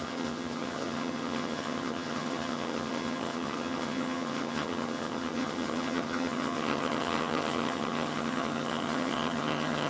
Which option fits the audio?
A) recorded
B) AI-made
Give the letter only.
B